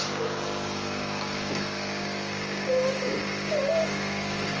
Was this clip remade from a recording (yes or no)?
yes